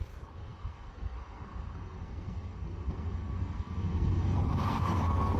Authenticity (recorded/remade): remade